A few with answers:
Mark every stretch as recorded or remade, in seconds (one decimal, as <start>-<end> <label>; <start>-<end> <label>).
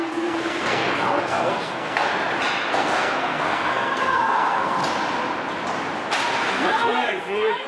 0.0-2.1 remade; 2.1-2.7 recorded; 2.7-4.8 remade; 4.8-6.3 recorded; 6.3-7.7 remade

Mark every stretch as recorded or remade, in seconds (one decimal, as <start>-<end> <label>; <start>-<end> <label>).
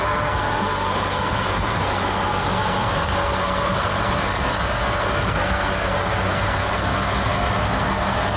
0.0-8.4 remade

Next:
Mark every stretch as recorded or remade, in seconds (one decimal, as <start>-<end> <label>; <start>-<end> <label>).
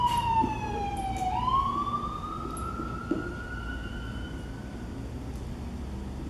0.0-6.3 recorded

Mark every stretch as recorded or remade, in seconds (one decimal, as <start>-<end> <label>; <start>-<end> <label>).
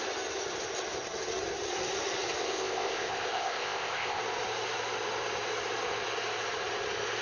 0.0-2.4 recorded; 2.4-4.2 remade; 4.2-7.2 recorded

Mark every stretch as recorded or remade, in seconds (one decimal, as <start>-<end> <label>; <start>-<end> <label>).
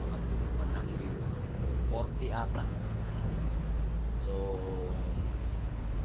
0.0-0.7 recorded; 0.7-3.6 remade; 3.6-4.5 recorded; 4.5-6.0 remade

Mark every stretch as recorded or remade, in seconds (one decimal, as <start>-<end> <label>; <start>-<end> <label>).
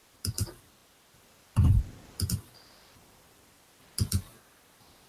0.0-5.1 remade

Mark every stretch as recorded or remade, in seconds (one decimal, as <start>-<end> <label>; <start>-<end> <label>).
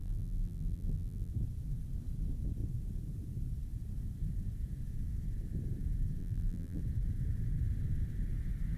0.0-1.3 remade; 1.3-6.2 recorded; 6.2-6.8 remade; 6.8-8.8 recorded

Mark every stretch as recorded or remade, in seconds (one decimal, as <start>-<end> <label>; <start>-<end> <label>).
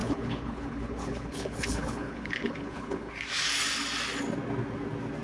0.0-3.1 remade; 3.1-5.2 recorded